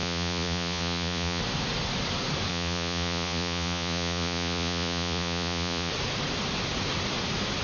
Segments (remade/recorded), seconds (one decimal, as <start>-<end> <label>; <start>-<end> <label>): 0.0-1.4 remade; 1.4-2.5 recorded; 2.5-5.9 remade; 5.9-7.6 recorded